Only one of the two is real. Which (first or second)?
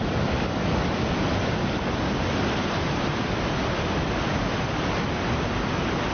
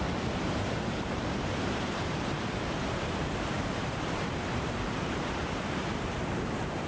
first